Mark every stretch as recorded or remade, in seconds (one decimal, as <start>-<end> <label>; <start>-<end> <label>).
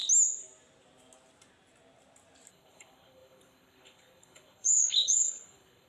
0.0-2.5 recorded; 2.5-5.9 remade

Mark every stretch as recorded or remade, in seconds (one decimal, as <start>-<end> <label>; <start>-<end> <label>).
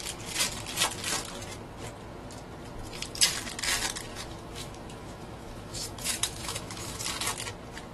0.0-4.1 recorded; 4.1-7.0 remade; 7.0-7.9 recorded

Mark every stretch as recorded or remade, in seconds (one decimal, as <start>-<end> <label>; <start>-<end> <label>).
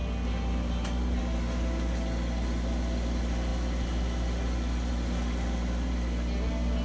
0.0-6.8 recorded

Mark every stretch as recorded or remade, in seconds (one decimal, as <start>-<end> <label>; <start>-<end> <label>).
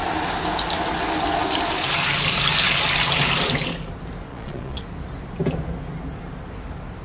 0.0-4.3 recorded; 4.3-4.8 remade; 4.8-7.0 recorded